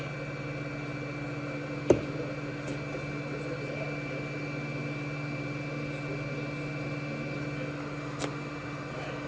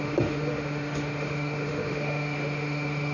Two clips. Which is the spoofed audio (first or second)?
second